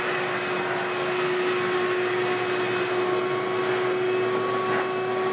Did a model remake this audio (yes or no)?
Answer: no